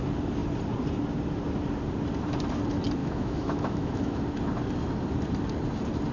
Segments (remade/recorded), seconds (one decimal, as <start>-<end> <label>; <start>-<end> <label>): 0.0-3.0 recorded; 3.0-4.2 remade; 4.2-6.1 recorded

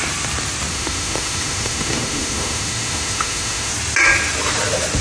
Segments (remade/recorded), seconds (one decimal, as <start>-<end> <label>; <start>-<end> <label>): 0.0-0.7 recorded; 0.7-3.7 remade; 3.7-5.0 recorded